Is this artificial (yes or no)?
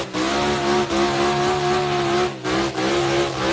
no